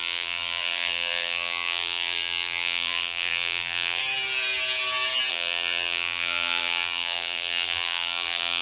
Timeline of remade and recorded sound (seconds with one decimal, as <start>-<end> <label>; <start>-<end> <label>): 0.0-4.0 remade; 4.0-5.3 recorded; 5.3-8.6 remade